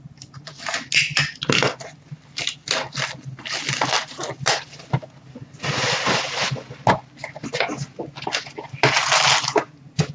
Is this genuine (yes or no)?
yes